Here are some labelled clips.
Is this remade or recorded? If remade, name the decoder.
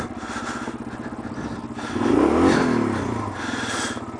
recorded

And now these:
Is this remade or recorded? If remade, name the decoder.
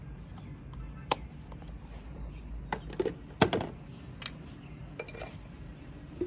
recorded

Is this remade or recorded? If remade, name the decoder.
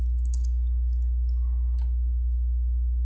recorded